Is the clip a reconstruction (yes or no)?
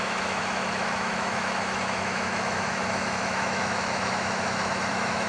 yes